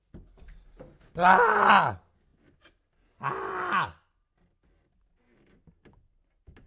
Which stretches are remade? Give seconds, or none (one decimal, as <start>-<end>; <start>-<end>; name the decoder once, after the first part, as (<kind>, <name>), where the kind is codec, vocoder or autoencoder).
none